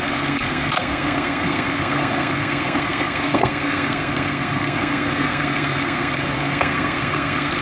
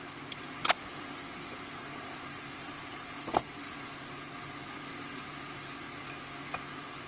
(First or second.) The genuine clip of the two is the second